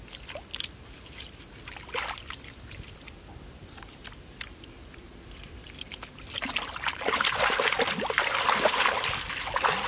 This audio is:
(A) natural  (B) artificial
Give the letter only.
A